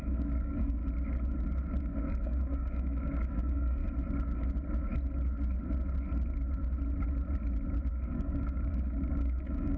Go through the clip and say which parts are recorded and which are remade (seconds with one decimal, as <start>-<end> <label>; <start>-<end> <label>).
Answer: 0.0-0.8 remade; 0.8-1.8 recorded; 1.8-3.8 remade; 3.8-7.9 recorded; 7.9-9.8 remade